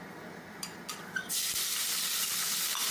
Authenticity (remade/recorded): recorded